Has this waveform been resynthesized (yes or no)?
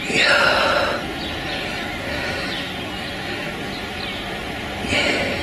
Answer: no